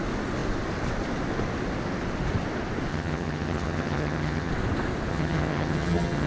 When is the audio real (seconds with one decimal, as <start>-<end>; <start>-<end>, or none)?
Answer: 0.0-2.9; 4.5-5.1